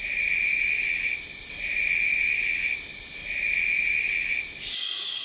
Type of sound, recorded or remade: recorded